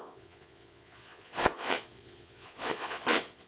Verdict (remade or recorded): remade